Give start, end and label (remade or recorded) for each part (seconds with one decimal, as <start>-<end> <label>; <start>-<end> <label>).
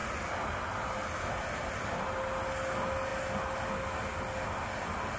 0.0-5.2 recorded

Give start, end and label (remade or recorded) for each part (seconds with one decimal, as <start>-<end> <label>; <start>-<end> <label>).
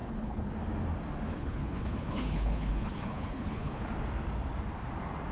0.0-0.5 remade; 0.5-1.3 recorded; 1.3-3.9 remade; 3.9-5.3 recorded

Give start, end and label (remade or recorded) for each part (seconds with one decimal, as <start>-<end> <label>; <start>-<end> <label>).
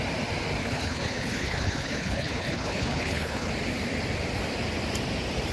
0.0-0.6 recorded; 0.6-3.5 remade; 3.5-5.5 recorded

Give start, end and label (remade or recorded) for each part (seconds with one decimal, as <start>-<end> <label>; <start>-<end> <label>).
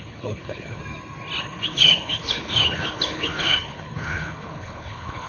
0.0-0.8 remade; 0.8-1.4 recorded; 1.4-5.3 remade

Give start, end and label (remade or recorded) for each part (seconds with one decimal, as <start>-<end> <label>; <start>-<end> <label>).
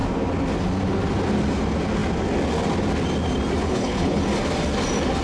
0.0-3.6 recorded; 3.6-4.2 remade; 4.2-5.2 recorded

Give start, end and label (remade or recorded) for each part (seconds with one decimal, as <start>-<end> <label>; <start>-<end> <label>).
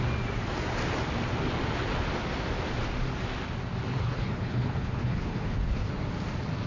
0.0-3.9 recorded; 3.9-5.9 remade; 5.9-6.7 recorded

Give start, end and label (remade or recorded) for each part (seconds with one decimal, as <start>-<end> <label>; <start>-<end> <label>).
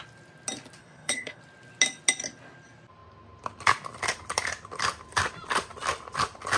0.0-0.8 recorded; 0.8-1.4 remade; 1.4-6.6 recorded